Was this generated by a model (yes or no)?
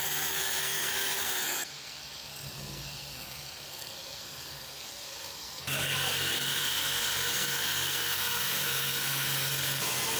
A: yes